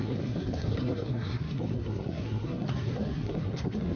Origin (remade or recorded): remade